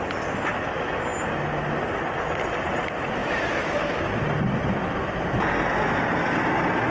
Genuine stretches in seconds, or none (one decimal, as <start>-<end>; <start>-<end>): 0.0-3.2; 4.0-6.9